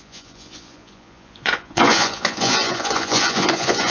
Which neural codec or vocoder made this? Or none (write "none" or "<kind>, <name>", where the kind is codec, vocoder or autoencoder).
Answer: vocoder, Vocos